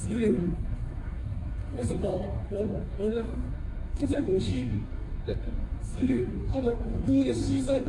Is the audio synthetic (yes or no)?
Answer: yes